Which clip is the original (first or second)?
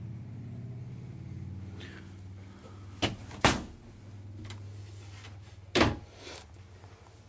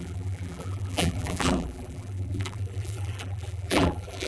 first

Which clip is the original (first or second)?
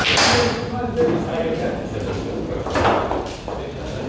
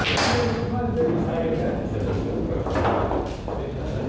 second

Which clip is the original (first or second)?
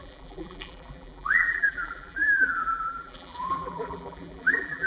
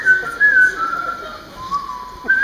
second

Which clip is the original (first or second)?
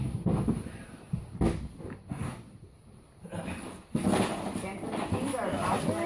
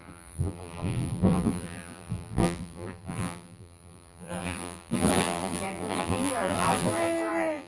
first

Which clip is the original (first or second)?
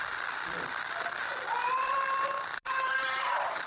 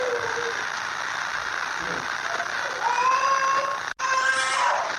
second